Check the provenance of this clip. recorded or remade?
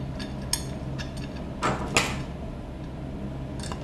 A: recorded